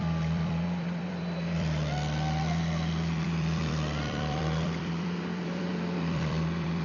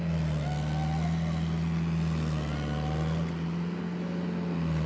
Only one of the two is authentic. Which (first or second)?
second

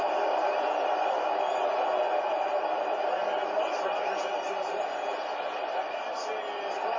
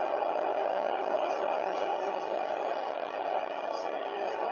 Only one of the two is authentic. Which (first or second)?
first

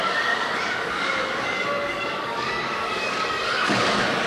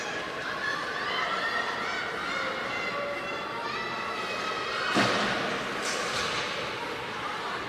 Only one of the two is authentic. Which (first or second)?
second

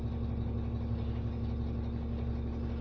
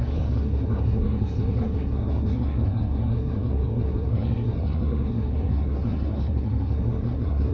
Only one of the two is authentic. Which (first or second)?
first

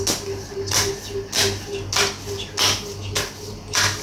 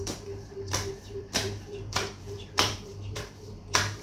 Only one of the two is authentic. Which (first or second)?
first